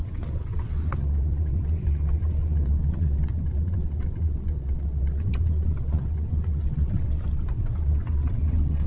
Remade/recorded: remade